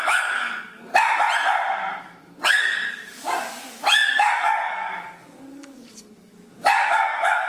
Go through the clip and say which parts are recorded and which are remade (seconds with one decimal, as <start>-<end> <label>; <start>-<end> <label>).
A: 0.0-0.9 remade; 0.9-2.0 recorded; 2.0-7.5 remade